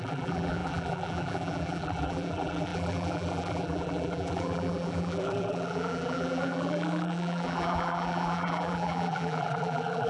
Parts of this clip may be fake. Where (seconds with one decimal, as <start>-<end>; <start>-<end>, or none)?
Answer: 0.0-10.1